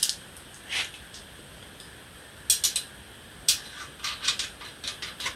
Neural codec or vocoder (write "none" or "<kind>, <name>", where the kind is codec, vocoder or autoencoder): none